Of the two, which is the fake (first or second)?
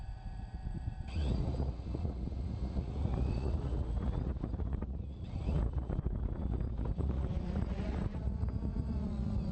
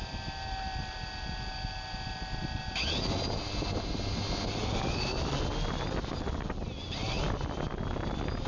first